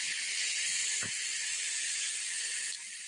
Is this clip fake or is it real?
real